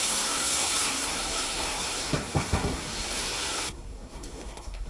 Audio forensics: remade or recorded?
remade